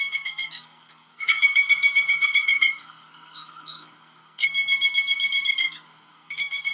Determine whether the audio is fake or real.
fake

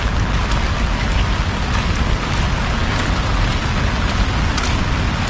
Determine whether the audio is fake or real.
real